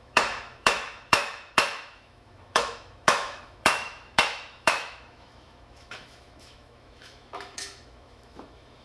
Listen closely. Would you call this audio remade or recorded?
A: remade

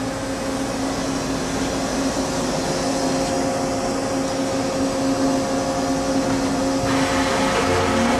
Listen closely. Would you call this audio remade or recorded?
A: recorded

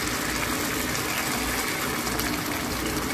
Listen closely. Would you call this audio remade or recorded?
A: recorded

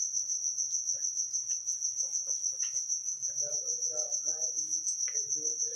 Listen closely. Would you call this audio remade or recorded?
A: recorded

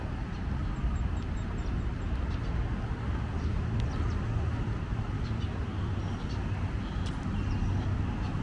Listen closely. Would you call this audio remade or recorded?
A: recorded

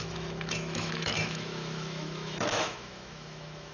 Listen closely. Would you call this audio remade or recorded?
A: remade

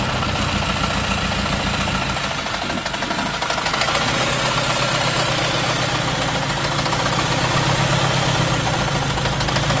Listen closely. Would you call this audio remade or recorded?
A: recorded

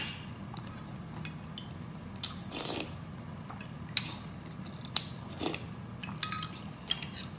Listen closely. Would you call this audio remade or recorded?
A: recorded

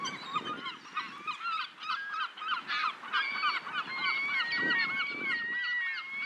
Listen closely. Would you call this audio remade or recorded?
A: recorded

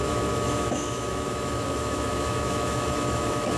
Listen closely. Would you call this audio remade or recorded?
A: remade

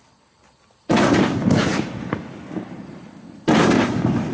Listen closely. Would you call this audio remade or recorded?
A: recorded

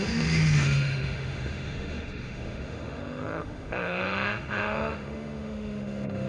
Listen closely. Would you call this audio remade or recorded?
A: remade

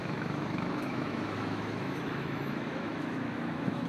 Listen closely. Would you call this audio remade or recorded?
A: remade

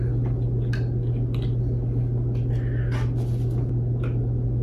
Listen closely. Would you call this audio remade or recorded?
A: recorded